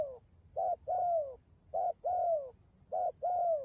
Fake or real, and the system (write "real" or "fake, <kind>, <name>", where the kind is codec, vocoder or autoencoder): real